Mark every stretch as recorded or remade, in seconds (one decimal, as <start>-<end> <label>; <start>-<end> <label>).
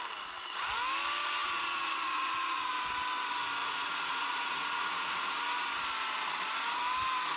0.0-1.4 recorded; 1.4-2.7 remade; 2.7-3.6 recorded; 3.6-5.1 remade; 5.1-7.4 recorded